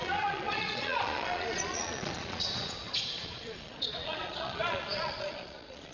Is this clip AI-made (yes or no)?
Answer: yes